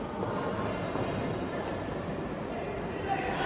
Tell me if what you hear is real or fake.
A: real